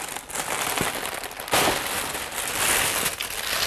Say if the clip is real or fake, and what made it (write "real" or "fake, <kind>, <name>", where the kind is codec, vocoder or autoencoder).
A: real